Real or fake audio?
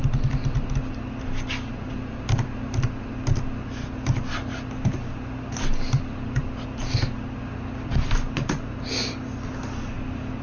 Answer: real